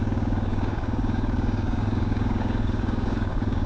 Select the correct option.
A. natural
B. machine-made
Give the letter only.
B